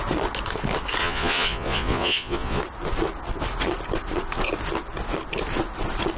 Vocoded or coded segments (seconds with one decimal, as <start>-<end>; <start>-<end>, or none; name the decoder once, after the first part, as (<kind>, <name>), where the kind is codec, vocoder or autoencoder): 1.0-2.6 (vocoder, Vocos)